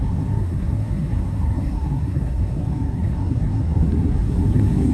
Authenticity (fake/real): fake